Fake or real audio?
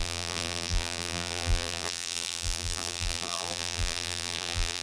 fake